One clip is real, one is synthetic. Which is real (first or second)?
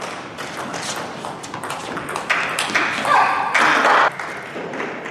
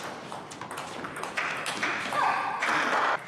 first